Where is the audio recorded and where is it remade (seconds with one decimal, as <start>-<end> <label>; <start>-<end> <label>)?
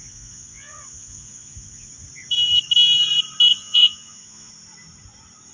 0.0-1.9 remade; 1.9-3.5 recorded; 3.5-4.5 remade; 4.5-5.5 recorded